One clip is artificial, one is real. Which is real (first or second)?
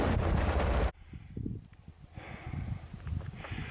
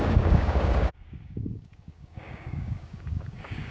first